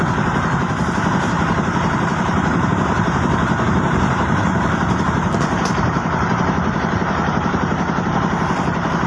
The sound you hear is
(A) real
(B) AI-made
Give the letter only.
B